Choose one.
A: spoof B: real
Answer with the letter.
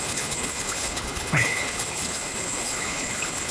A